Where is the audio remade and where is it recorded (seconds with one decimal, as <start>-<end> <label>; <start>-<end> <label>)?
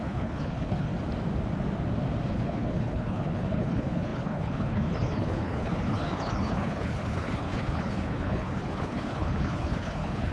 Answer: 0.0-0.9 remade; 0.9-2.3 recorded; 2.3-10.3 remade